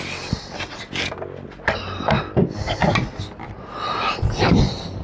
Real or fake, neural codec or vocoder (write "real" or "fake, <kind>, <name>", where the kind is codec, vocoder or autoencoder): real